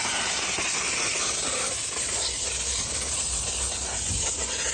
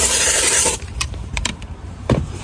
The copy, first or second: second